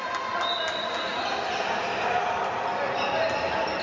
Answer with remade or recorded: recorded